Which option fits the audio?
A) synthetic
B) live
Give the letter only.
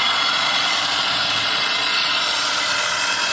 A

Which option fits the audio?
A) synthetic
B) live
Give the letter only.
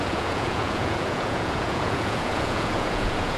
A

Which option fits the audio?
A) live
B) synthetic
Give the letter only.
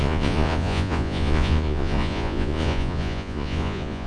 B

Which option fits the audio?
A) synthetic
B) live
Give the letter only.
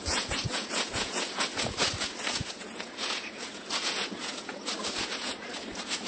A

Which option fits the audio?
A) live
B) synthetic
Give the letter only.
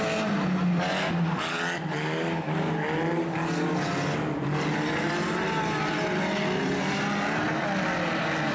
A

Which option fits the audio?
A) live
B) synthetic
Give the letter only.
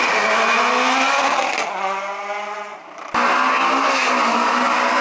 A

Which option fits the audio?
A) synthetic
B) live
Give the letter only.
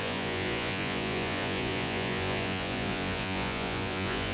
A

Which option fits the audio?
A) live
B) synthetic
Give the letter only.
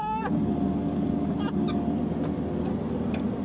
A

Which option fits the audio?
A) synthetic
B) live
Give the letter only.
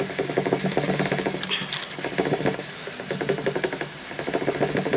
B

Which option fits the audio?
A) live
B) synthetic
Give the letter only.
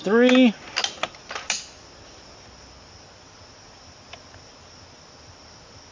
A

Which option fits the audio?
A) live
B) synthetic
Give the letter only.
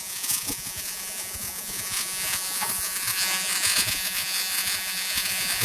B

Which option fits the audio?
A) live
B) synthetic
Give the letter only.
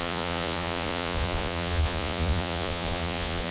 B